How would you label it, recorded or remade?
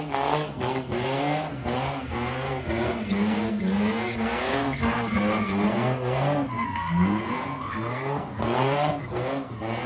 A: remade